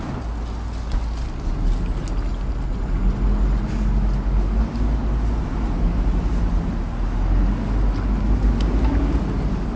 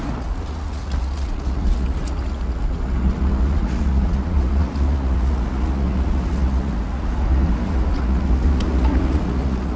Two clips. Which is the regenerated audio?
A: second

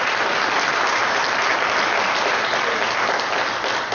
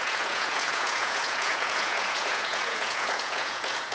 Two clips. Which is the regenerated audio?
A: second